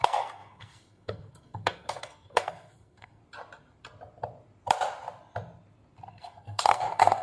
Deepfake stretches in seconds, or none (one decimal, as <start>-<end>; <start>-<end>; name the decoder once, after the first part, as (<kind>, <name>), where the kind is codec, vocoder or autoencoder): 0.0-3.2 (codec, SNAC); 6.1-7.2